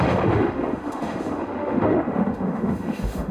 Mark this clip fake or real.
fake